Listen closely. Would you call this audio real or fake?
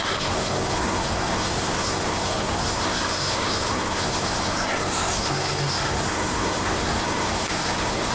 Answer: fake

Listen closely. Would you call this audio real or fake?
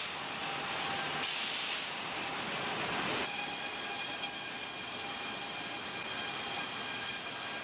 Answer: real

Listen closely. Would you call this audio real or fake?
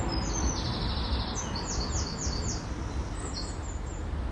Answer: real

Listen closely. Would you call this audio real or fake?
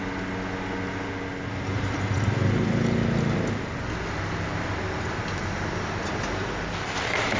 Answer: real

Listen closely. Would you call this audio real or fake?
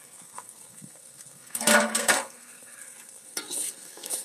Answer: fake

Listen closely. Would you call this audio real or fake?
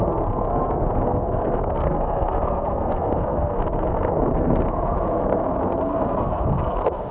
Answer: fake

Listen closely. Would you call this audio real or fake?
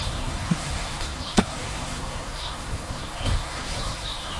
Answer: fake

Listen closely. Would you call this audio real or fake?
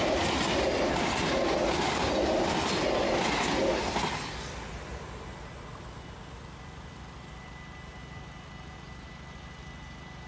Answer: real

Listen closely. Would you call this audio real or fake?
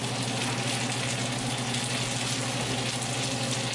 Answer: real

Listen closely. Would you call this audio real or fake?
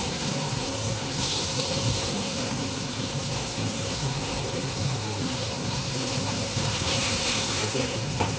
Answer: fake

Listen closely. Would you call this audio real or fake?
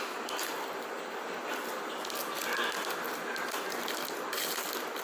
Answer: real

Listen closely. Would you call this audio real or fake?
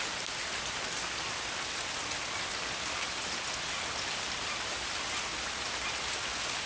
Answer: real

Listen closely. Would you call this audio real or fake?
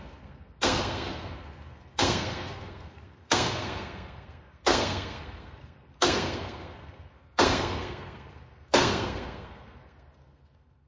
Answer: fake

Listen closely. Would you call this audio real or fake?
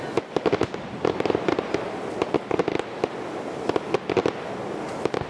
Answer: real